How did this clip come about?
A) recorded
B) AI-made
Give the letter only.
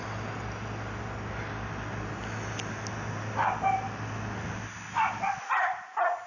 A